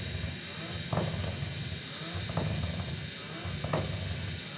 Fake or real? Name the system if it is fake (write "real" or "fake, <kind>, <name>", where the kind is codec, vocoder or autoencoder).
real